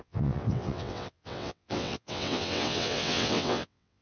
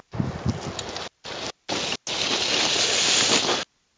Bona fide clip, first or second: second